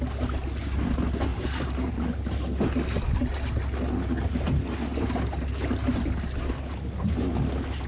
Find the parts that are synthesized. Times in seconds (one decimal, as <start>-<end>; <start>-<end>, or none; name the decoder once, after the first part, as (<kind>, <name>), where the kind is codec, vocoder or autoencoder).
1.3-1.9 (vocoder, BigVGAN v2)